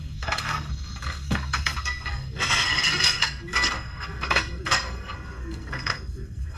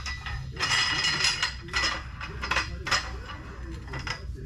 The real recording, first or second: second